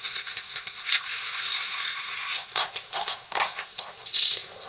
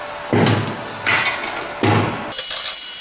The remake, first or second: first